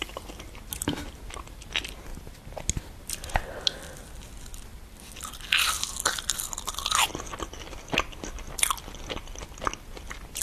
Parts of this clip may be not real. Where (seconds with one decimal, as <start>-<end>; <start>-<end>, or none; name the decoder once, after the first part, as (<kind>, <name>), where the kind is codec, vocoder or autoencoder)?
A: none